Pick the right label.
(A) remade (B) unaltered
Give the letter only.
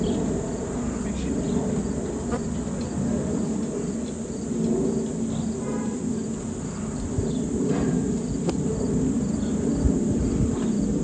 B